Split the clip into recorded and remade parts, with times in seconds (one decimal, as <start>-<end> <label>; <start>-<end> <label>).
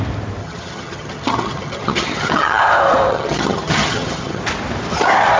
0.0-0.4 recorded; 0.4-2.6 remade; 2.6-3.1 recorded; 3.1-4.4 remade; 4.4-5.4 recorded